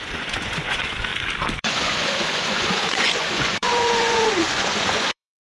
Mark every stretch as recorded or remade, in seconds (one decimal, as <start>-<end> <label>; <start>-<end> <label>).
0.0-1.1 remade; 1.1-1.6 recorded; 1.6-5.4 remade